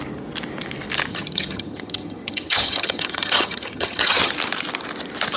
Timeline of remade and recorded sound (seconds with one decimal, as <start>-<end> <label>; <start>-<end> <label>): 0.0-1.1 recorded; 1.1-4.3 remade; 4.3-5.4 recorded